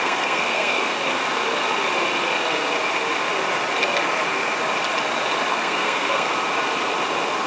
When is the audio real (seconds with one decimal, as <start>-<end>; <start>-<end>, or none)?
1.0-5.5; 6.3-7.5